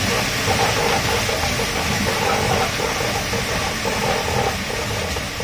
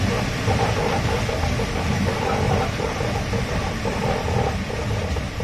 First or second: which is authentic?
first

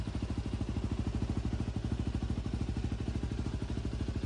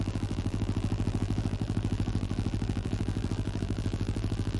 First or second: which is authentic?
first